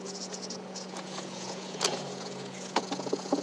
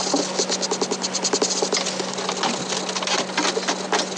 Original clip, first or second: second